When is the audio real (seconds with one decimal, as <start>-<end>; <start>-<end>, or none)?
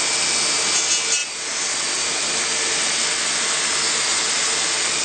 0.0-5.0